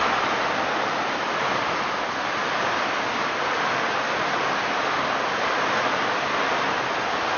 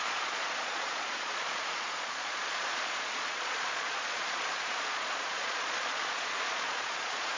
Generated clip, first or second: second